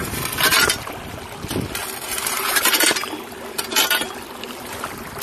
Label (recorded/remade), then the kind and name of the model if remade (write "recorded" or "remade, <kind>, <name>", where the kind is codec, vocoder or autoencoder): recorded